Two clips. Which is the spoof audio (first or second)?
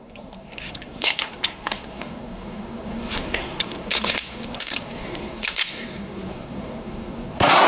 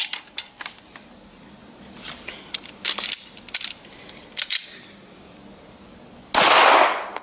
first